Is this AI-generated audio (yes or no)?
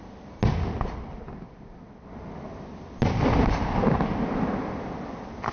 no